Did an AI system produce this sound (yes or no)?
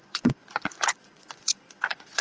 yes